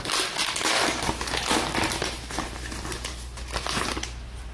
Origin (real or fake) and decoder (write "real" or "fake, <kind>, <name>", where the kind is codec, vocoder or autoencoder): real